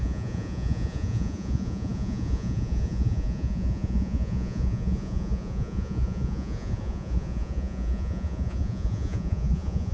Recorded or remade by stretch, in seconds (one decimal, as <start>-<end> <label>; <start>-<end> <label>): 0.0-9.9 remade